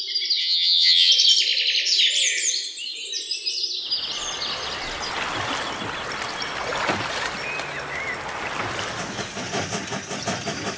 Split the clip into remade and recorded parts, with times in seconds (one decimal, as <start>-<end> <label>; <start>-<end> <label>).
0.0-0.4 recorded; 0.4-1.1 remade; 1.1-10.8 recorded